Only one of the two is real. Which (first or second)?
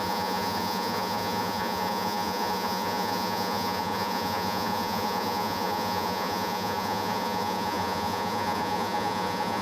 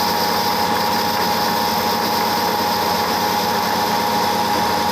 second